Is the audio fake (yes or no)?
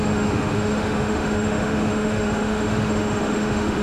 yes